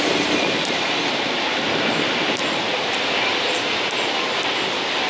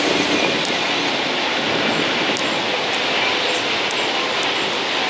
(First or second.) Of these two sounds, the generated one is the first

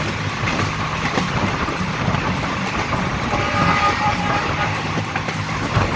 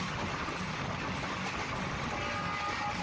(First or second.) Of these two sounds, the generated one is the first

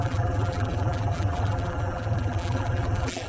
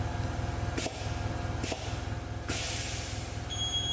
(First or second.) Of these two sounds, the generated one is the first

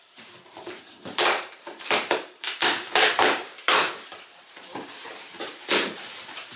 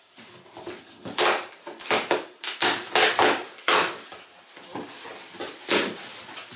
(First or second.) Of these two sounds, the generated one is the first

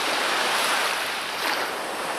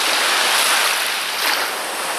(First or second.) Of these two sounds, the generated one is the first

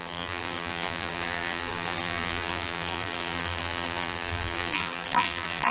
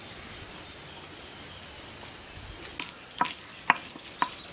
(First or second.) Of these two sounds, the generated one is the first